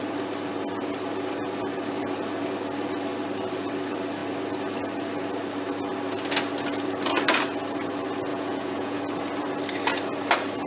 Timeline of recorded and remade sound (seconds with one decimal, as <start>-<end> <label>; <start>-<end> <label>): 0.0-8.3 recorded; 8.3-9.0 remade; 9.0-10.7 recorded